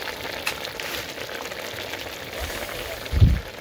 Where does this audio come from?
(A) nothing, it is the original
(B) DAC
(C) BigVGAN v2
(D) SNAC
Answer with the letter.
A